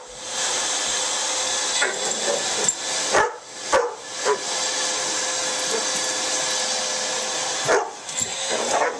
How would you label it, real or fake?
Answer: real